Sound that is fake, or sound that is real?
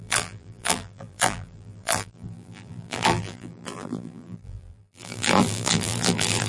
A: fake